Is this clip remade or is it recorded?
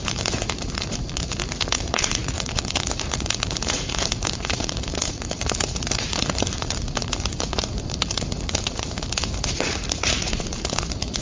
remade